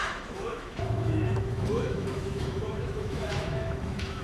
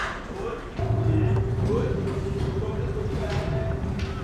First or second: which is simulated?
first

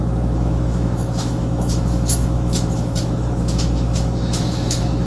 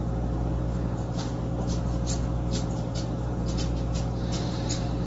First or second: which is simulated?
first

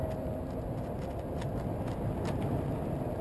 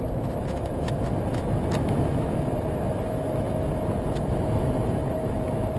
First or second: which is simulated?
second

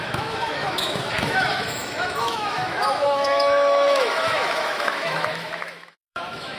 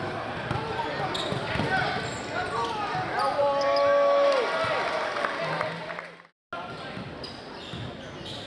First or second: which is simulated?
first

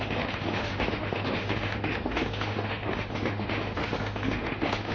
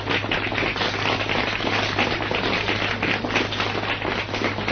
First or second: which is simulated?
first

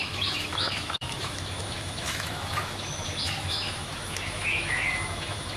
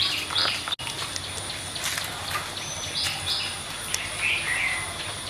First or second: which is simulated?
first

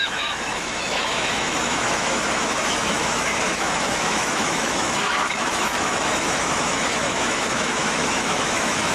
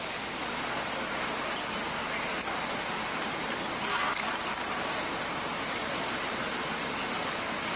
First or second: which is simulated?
first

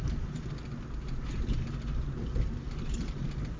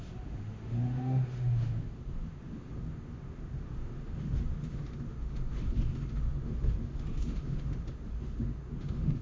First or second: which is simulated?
second